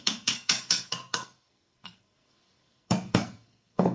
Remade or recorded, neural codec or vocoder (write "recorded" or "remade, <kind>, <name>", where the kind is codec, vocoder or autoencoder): remade, codec, SNAC